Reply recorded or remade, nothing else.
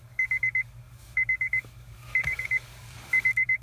remade